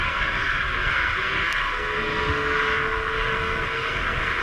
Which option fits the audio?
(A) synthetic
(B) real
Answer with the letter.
A